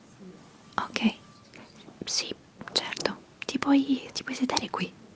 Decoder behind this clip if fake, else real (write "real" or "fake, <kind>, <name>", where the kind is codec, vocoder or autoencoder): real